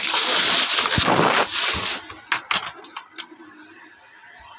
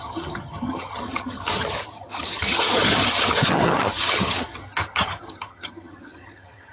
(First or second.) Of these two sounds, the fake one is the second